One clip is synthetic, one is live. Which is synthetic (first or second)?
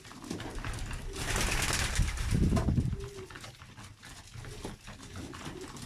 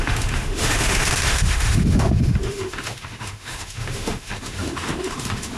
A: second